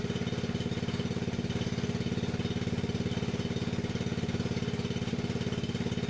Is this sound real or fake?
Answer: real